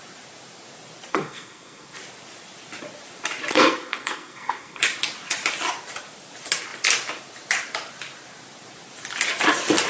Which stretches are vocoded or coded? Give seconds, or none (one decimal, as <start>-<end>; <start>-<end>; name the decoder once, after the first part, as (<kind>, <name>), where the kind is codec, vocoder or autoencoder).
1.1-2.0 (codec, SNAC); 3.5-4.8